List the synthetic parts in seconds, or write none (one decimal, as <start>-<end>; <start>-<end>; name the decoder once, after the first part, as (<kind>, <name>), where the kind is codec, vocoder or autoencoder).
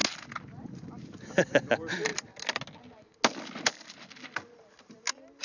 none